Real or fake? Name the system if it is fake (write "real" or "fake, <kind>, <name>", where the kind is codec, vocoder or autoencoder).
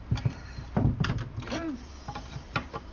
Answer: fake, vocoder, BigVGAN v2